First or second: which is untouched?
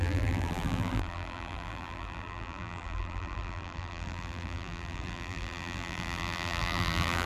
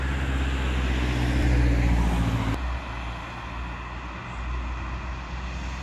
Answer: second